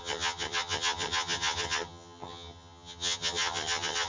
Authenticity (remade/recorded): remade